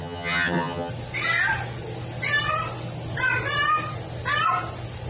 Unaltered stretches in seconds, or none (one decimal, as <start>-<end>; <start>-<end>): 0.9-5.1